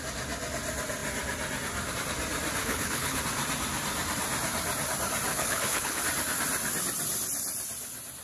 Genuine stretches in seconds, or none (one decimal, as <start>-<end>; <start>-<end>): 0.0-2.6; 3.2-5.3; 6.0-8.2